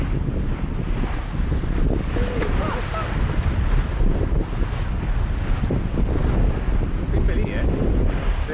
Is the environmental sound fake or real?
real